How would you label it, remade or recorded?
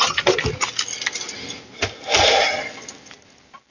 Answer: recorded